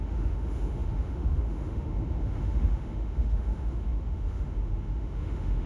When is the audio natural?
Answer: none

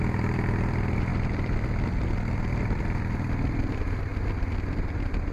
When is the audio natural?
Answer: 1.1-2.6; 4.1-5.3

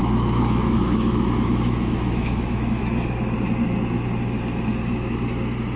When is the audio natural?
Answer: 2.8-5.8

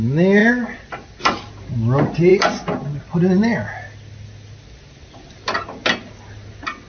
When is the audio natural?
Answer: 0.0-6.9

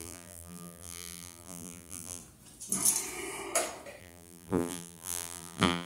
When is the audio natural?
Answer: 2.2-4.0

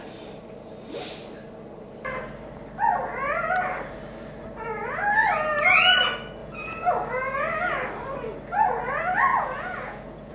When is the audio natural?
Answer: 0.0-6.4; 6.9-9.3